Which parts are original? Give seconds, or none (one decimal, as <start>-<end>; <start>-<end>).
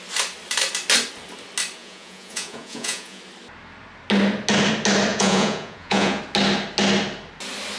0.0-1.8; 3.2-5.1; 6.2-7.8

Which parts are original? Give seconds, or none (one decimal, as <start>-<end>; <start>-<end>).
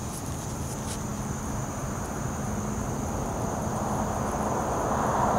0.0-5.4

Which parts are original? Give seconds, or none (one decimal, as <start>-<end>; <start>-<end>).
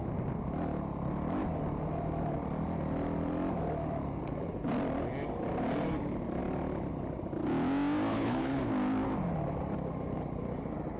0.0-8.1; 8.7-11.0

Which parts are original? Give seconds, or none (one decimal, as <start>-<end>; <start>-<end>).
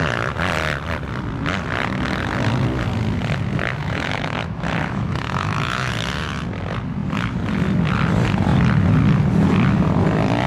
0.0-3.8; 5.9-10.5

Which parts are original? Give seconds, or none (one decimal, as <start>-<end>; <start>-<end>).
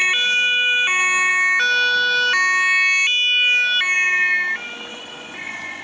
0.0-4.9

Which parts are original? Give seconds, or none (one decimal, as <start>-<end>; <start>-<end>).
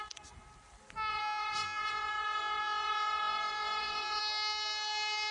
0.0-1.1; 4.2-5.3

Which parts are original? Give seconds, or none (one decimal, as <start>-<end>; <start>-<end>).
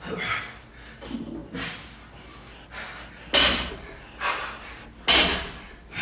0.0-6.0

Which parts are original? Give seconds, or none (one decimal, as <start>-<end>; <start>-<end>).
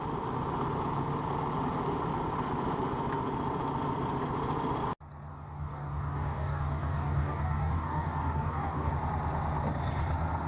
0.0-5.3; 8.9-10.5